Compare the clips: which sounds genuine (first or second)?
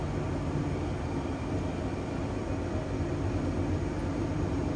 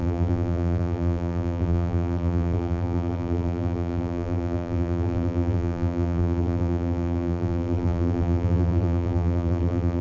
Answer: first